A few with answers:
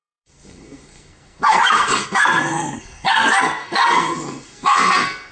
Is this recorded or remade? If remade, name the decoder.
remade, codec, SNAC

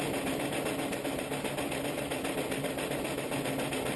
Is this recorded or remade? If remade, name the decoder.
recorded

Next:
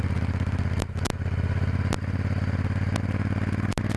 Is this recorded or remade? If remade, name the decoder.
recorded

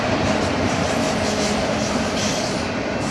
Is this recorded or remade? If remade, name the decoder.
recorded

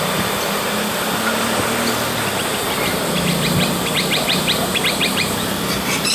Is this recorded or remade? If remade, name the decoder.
recorded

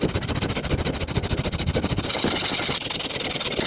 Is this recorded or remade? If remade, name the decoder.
recorded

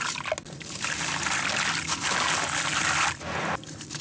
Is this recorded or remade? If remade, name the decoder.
recorded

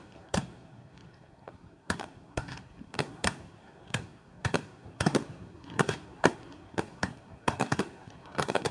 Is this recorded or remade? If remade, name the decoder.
remade, codec, SNAC